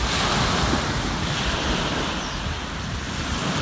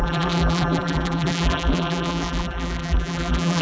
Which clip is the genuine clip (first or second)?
first